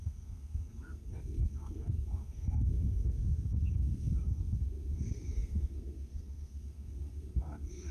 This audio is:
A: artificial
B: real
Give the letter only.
A